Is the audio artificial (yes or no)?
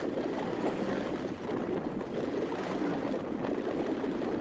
no